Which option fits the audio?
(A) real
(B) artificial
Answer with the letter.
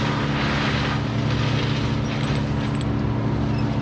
A